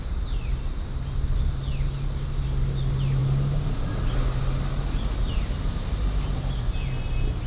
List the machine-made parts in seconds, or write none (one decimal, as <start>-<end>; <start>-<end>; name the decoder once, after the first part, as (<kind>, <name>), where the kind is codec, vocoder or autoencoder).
none